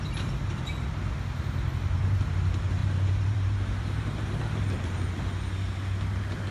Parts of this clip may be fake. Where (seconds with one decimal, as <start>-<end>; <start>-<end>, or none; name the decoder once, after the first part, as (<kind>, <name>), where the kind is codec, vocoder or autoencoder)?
2.8-4.4 (vocoder, BigVGAN v2)